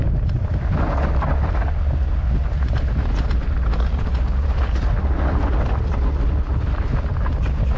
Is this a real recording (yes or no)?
yes